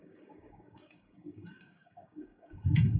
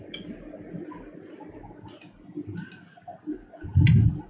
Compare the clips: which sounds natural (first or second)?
second